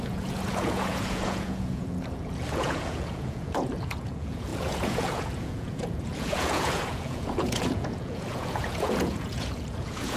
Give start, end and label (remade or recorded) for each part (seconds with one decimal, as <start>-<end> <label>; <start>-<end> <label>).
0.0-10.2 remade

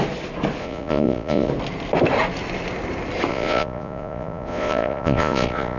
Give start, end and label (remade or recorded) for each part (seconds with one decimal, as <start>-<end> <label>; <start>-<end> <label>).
0.0-0.6 recorded; 0.6-1.5 remade; 1.5-3.3 recorded; 3.3-5.8 remade

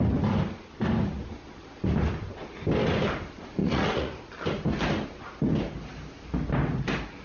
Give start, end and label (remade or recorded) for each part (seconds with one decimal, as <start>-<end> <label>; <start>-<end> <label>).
0.0-3.6 recorded; 3.6-4.3 remade; 4.3-7.2 recorded